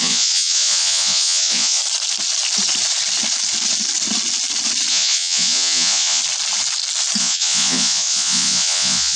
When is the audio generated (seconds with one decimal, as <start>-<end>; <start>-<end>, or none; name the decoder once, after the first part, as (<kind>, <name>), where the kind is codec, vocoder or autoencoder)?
0.0-1.8 (vocoder, Vocos); 4.9-6.2; 7.2-9.2